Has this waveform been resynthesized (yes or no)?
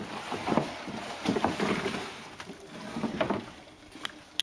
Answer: no